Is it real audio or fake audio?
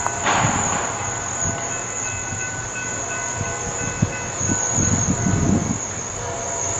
real